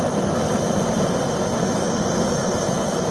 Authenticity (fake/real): real